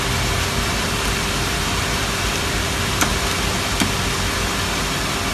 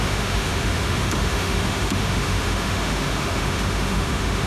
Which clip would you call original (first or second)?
first